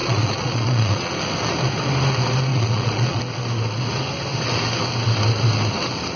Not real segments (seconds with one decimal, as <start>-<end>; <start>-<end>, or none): 0.0-1.1; 2.5-3.2